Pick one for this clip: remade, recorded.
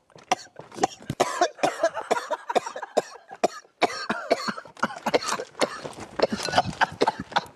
recorded